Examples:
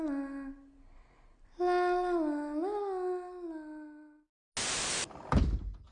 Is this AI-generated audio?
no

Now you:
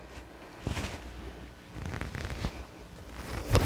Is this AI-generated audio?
no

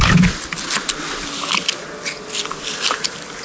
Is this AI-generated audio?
no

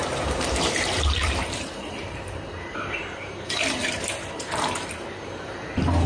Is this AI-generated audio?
yes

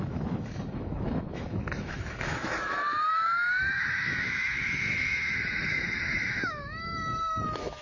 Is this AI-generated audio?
yes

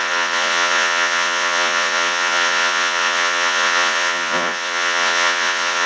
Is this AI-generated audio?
yes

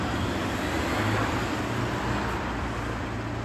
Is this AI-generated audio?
no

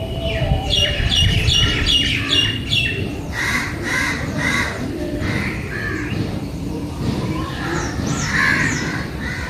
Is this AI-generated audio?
yes